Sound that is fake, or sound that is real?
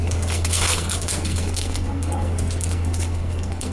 fake